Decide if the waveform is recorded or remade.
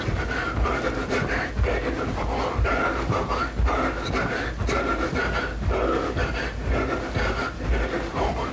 recorded